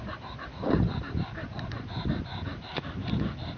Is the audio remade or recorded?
recorded